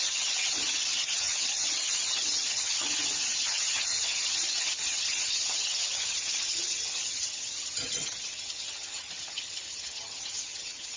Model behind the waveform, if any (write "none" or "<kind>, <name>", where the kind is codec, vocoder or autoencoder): vocoder, HiFi-GAN